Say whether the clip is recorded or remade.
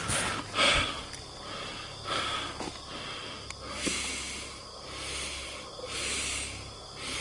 recorded